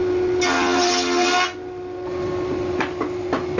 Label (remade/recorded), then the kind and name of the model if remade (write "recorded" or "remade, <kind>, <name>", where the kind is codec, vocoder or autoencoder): recorded